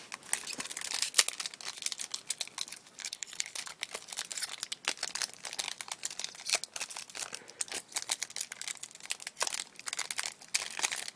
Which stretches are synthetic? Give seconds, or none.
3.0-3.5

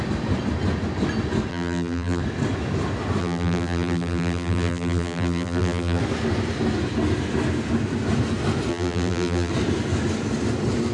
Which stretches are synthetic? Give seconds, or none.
1.5-2.2; 3.2-6.0; 8.7-9.5

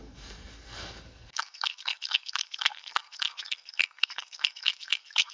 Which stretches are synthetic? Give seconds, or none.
0.0-5.3

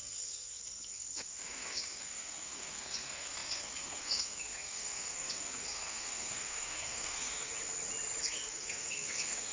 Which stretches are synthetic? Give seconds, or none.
0.0-7.5; 8.2-9.5

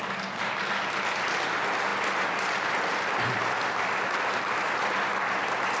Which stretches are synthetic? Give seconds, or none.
none

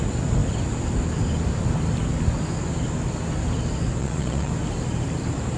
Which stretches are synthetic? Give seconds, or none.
4.0-4.5

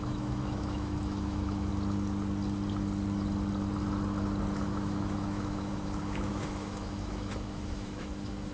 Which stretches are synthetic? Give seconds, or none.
0.0-1.7; 4.6-8.5

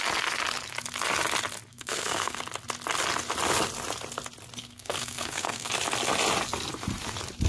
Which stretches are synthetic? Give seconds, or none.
1.7-2.4; 4.6-5.7